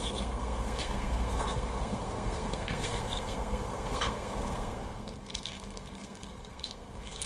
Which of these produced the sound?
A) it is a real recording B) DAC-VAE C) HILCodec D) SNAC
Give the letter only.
D